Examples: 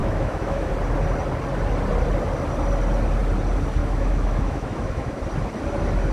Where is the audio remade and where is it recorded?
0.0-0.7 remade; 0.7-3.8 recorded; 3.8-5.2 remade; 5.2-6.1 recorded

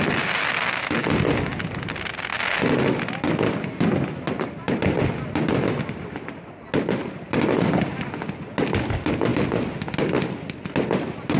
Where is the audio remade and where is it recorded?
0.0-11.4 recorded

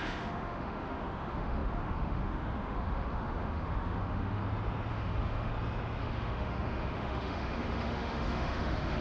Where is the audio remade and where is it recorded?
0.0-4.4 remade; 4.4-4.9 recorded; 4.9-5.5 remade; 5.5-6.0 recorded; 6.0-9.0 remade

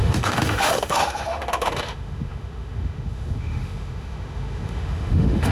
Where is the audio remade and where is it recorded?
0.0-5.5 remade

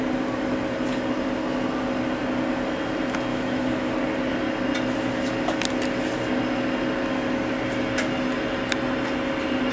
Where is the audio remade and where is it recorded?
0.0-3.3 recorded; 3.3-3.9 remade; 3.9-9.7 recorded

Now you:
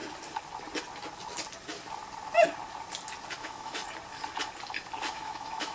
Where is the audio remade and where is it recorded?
0.0-3.4 recorded; 3.4-3.8 remade; 3.8-5.1 recorded; 5.1-5.7 remade